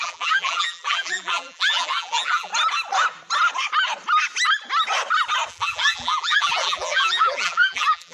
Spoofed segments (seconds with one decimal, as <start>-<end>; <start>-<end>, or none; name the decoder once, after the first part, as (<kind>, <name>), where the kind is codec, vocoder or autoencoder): 0.0-2.5 (vocoder, BigVGAN v2); 5.5-8.1